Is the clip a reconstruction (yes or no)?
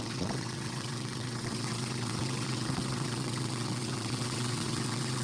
yes